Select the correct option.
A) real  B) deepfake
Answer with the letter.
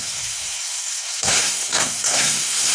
B